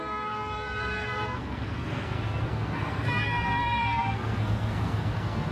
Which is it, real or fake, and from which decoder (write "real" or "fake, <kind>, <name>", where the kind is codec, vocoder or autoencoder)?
fake, codec, SNAC